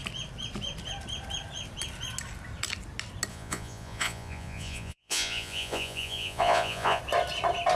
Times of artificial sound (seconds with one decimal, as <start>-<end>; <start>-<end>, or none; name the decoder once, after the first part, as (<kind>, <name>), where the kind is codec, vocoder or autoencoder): 3.3-7.0 (vocoder, Vocos)